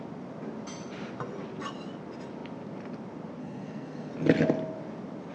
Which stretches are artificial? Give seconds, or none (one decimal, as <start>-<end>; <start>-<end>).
3.4-4.1